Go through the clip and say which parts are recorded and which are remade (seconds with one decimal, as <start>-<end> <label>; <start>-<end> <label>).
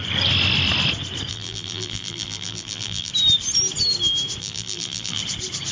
0.0-1.3 recorded; 1.3-3.1 remade; 3.1-4.4 recorded; 4.4-5.2 remade; 5.2-5.7 recorded